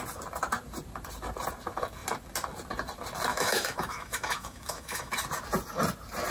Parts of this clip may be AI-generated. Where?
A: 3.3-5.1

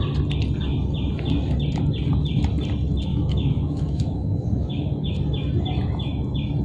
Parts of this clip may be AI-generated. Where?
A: 3.1-5.1